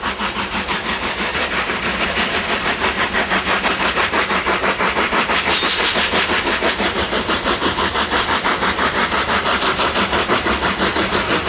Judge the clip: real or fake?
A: real